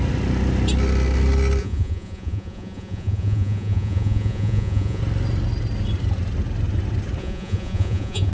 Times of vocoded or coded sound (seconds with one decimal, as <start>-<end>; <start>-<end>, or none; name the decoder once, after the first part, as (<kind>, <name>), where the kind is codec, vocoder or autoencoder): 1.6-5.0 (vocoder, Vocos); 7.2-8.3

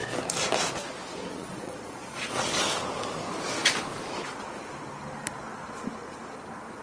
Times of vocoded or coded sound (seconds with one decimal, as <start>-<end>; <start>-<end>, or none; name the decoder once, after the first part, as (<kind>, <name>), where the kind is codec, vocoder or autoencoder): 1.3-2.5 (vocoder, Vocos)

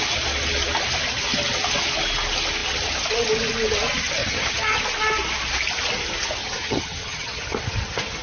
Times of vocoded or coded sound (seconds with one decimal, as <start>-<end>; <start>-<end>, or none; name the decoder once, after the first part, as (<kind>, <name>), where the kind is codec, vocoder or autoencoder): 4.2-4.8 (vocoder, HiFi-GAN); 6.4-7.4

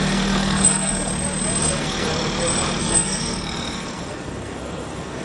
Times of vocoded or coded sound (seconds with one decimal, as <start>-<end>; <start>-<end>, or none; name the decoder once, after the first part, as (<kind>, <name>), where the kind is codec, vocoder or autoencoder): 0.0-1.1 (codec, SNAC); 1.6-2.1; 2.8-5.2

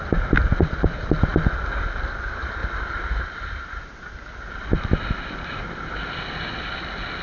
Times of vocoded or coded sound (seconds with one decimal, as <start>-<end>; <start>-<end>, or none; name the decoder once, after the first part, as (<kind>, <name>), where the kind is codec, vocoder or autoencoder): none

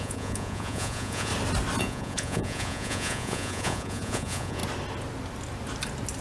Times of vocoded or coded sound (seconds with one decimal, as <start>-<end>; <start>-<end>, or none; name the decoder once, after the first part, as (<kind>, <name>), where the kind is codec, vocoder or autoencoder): 0.0-1.3 (vocoder, Vocos); 1.8-4.6